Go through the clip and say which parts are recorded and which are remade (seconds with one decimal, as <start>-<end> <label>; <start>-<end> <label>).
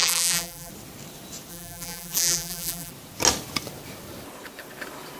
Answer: 0.0-0.7 remade; 0.7-1.5 recorded; 1.5-2.9 remade; 2.9-5.2 recorded